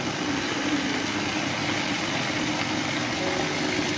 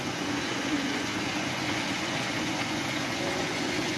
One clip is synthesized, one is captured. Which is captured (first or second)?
first